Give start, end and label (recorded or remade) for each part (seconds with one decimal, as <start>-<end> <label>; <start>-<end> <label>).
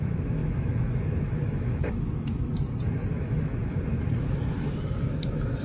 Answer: 0.0-2.5 remade; 2.5-3.1 recorded; 3.1-5.6 remade